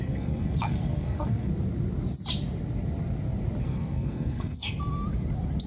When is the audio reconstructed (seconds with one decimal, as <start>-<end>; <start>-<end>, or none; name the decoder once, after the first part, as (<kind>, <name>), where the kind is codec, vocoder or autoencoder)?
0.0-1.5 (codec, SNAC); 3.6-4.7